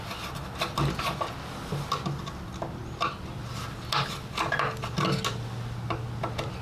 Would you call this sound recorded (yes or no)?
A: yes